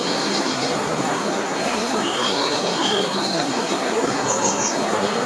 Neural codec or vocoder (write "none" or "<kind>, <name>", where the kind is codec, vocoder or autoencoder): codec, SNAC